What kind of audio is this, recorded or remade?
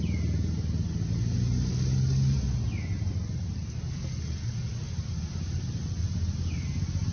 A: recorded